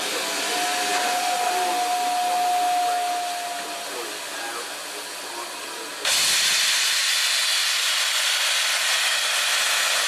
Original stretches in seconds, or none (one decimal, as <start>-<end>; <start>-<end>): 0.0-10.1